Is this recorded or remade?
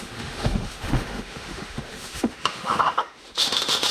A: remade